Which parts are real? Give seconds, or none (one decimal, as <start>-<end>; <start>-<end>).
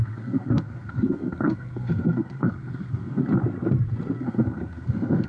3.2-4.2